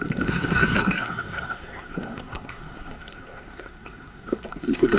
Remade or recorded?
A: remade